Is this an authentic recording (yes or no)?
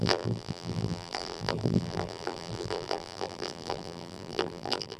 no